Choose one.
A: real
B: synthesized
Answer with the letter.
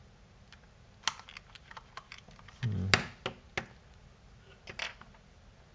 A